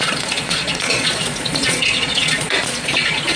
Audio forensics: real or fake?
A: fake